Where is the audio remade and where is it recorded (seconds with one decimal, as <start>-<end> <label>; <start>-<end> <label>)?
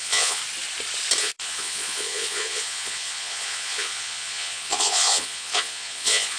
0.0-0.4 remade; 0.4-1.2 recorded; 1.2-6.4 remade